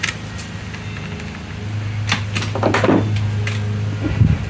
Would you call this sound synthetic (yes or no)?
no